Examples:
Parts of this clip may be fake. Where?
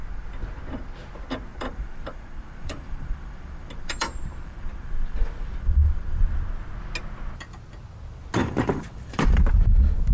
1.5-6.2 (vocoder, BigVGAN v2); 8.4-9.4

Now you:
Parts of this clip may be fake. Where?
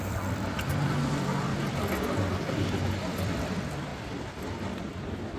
0.0-1.5 (vocoder, BigVGAN v2); 2.3-5.4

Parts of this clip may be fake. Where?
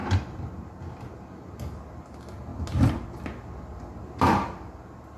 0.0-0.8 (vocoder, BigVGAN v2)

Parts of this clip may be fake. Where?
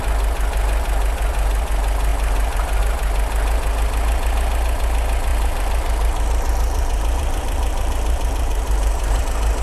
2.1-2.8 (vocoder, BigVGAN v2); 5.3-9.2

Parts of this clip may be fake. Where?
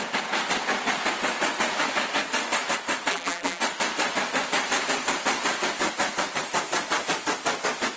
3.1-3.6 (vocoder, BigVGAN v2)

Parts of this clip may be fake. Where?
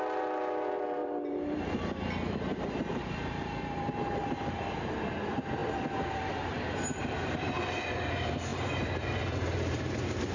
0.0-10.3 (vocoder, BigVGAN v2)